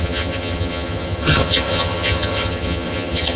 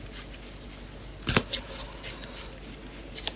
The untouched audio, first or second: second